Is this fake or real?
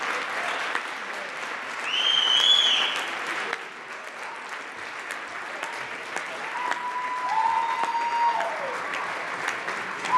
real